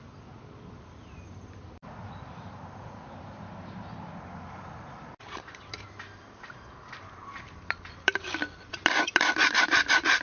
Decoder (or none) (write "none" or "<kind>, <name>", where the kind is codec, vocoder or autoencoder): vocoder, BigVGAN v2